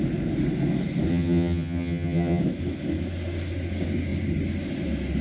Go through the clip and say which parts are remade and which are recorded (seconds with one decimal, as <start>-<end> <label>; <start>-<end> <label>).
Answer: 0.0-1.1 recorded; 1.1-2.4 remade; 2.4-5.2 recorded